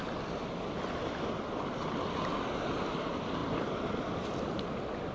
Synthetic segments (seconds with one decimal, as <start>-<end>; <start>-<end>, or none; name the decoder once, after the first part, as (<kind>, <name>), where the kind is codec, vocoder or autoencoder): none